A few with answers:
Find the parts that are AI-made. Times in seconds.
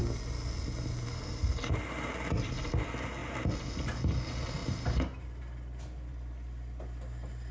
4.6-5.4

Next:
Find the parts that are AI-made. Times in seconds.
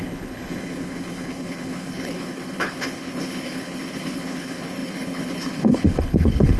0.0-6.6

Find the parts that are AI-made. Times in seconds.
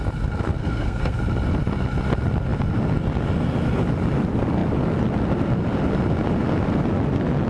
0.6-1.2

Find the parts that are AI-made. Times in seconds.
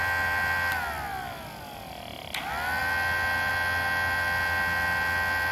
none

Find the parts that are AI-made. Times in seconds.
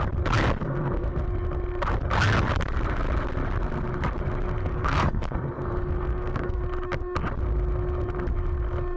0.6-1.1; 4.7-6.6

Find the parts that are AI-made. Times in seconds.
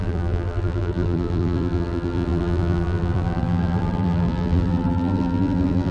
0.0-5.9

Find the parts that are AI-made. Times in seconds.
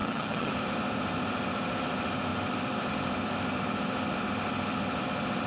0.0-0.5